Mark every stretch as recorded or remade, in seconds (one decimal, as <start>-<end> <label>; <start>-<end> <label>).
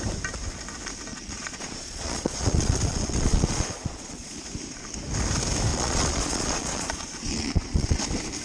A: 0.0-1.1 recorded; 1.1-4.5 remade; 4.5-5.7 recorded; 5.7-8.0 remade; 8.0-8.4 recorded